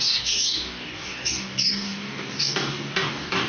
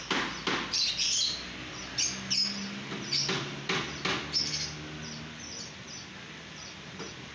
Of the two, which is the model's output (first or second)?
first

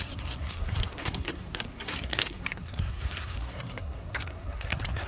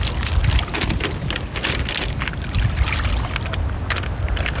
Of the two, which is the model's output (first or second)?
first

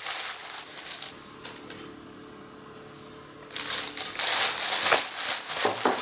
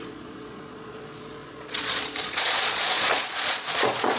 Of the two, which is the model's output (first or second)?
second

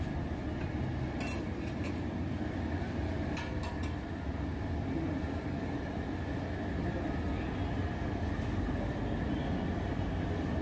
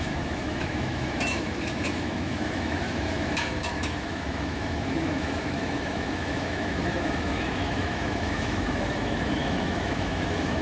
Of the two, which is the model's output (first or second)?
second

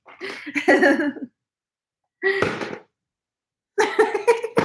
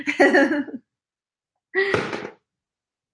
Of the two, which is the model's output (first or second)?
first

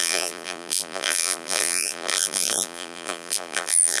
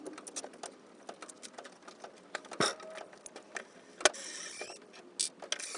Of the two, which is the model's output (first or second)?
first